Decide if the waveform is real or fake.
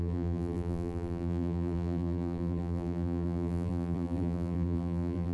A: fake